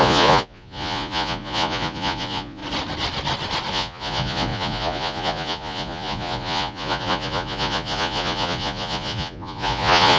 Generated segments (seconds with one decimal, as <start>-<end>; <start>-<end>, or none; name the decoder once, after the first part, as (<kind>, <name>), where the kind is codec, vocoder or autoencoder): 0.0-2.6 (vocoder, Vocos); 3.7-10.2